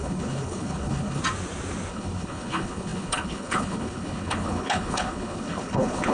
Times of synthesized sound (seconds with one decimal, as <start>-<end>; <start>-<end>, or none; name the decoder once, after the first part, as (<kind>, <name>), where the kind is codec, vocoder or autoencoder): 0.0-1.2 (codec, HILCodec); 1.9-6.1